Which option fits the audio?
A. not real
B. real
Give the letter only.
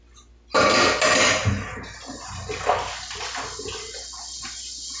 B